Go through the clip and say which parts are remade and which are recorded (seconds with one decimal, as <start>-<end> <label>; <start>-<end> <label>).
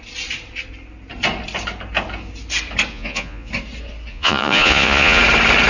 0.0-2.9 recorded; 2.9-3.5 remade; 3.5-4.1 recorded; 4.1-5.2 remade; 5.2-5.7 recorded